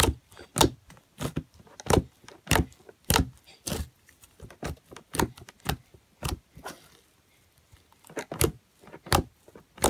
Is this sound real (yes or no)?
yes